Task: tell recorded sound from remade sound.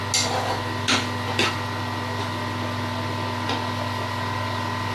recorded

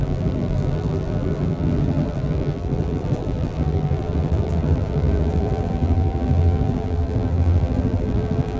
remade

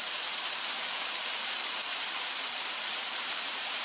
remade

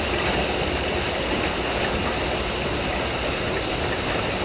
recorded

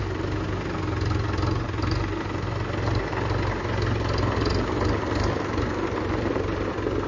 recorded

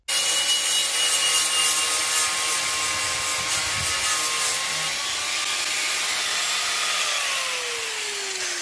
recorded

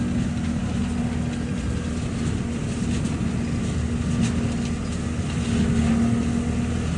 recorded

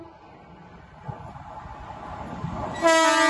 recorded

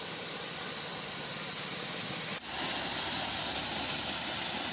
recorded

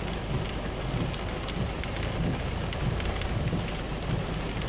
recorded